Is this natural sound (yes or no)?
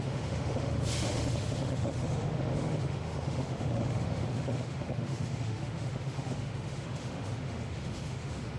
no